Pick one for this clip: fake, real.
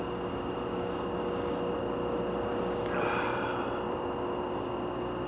real